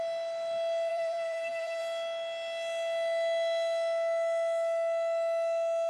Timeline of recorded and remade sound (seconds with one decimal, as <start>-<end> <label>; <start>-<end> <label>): 0.0-0.9 recorded; 0.9-1.8 remade; 1.8-5.9 recorded